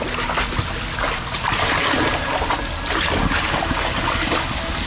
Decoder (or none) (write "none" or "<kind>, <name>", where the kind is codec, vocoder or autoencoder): none